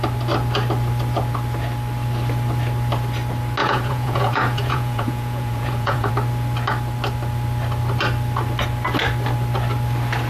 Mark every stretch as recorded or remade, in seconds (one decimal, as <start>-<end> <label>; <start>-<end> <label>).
0.0-3.6 recorded; 3.6-6.1 remade; 6.1-10.3 recorded

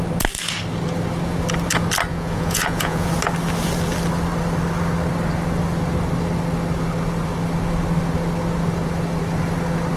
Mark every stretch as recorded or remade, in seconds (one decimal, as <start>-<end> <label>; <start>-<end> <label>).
0.0-2.1 recorded; 2.1-3.1 remade; 3.1-10.0 recorded